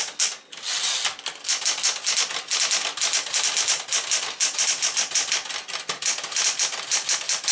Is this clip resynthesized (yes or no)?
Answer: no